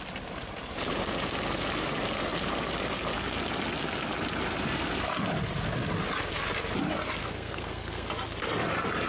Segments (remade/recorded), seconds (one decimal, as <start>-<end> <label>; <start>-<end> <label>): 0.0-7.2 recorded; 7.2-8.1 remade; 8.1-9.1 recorded